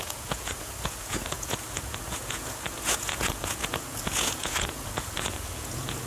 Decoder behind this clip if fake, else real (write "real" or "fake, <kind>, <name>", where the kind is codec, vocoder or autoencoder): fake, vocoder, Vocos